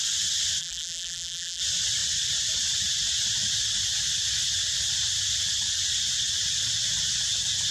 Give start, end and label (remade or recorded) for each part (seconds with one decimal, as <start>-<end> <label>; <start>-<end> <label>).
0.0-0.6 recorded; 0.6-1.6 remade; 1.6-7.7 recorded